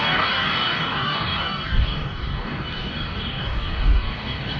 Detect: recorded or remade remade